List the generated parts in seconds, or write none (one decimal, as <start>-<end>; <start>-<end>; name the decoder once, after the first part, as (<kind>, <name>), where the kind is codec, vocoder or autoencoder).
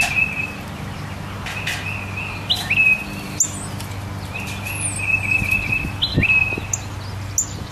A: none